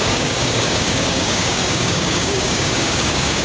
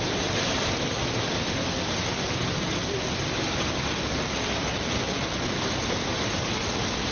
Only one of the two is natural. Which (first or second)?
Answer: second